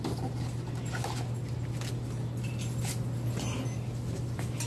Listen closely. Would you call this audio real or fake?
real